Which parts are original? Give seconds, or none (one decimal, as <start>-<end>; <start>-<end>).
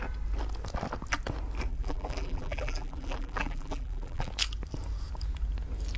0.0-1.7; 4.3-6.0